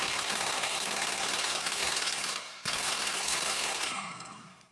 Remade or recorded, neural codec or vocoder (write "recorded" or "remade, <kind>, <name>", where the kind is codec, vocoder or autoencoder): remade, codec, SNAC